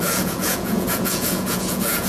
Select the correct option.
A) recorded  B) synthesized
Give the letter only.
B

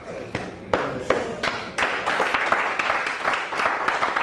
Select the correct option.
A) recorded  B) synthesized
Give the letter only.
A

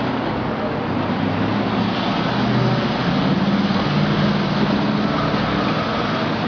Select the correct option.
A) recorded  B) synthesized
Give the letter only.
A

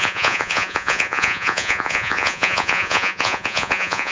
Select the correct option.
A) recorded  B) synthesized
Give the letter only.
B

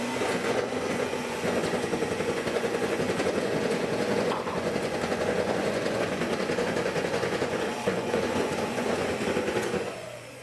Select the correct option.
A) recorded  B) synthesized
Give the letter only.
B